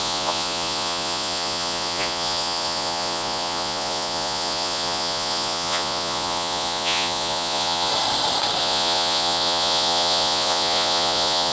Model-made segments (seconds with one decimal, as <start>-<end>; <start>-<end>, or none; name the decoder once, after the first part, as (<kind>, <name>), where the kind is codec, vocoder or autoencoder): 0.0-7.9 (vocoder, Vocos); 8.6-11.5